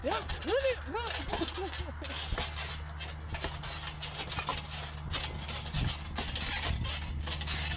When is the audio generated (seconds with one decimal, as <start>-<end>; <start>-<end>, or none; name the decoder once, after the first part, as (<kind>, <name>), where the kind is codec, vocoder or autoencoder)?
none